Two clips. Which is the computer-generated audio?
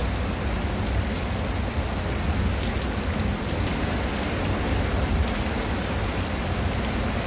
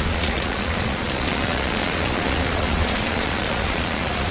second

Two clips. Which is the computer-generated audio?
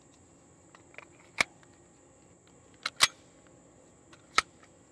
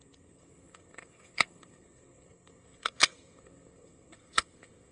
second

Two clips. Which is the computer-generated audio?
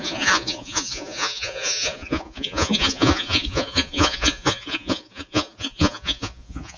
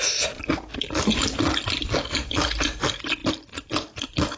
first